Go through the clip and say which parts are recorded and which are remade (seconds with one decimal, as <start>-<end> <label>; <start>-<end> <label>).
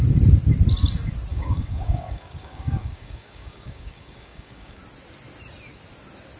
0.0-1.3 recorded; 1.3-4.8 remade; 4.8-6.4 recorded